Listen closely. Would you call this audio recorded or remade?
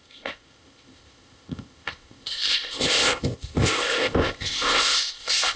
remade